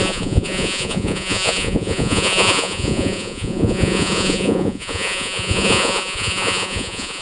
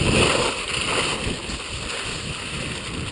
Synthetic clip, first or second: first